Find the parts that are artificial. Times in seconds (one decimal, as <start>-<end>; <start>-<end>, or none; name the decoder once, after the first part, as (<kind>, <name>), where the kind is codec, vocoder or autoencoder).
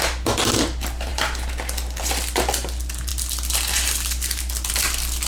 none